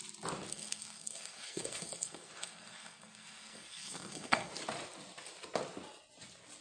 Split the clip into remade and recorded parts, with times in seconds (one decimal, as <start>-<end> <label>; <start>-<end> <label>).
0.0-0.5 recorded; 0.5-4.5 remade; 4.5-6.6 recorded